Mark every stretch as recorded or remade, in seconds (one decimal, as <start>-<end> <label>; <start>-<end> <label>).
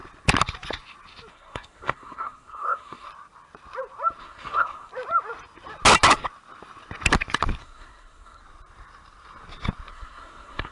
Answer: 0.0-1.3 recorded; 1.3-3.1 remade; 3.1-4.2 recorded; 4.2-4.9 remade; 4.9-7.6 recorded; 7.6-8.4 remade; 8.4-9.9 recorded; 9.9-10.7 remade